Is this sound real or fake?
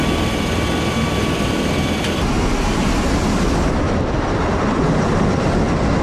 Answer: fake